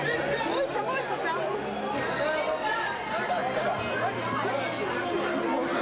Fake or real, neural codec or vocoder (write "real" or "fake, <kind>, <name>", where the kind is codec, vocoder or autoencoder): real